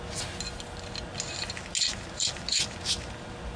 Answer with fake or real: real